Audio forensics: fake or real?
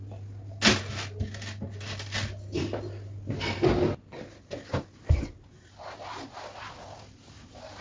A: real